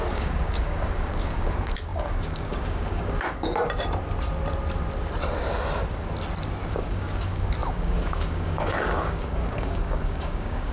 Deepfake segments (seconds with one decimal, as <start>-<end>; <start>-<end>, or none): 0.0-3.6; 6.7-10.7